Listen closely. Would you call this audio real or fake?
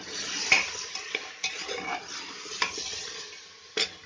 real